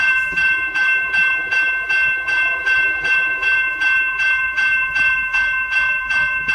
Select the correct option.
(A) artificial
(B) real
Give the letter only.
A